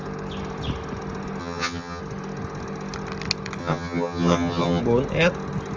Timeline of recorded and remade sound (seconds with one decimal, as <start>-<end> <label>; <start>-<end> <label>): 0.0-1.4 recorded; 1.4-2.0 remade; 2.0-3.6 recorded; 3.6-4.8 remade; 4.8-5.8 recorded